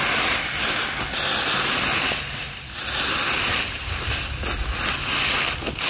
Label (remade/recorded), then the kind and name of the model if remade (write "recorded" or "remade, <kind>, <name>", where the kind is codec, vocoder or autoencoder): recorded